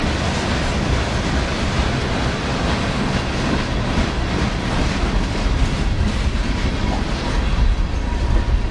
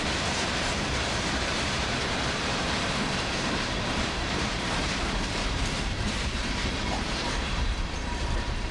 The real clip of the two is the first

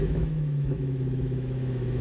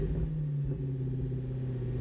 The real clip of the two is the second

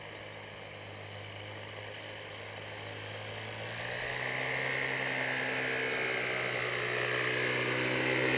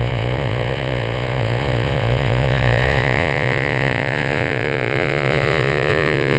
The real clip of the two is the first